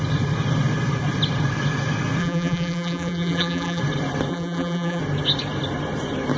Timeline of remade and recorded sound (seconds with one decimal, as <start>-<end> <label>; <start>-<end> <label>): 0.0-2.2 recorded; 2.2-3.8 remade; 3.8-4.3 recorded; 4.3-5.0 remade; 5.0-6.4 recorded